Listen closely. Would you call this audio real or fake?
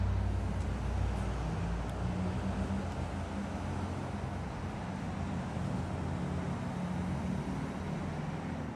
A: real